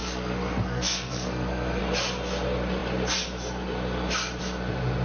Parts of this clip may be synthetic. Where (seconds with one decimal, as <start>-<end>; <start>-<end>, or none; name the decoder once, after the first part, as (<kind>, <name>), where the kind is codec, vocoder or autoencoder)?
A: 0.0-1.8 (codec, SNAC)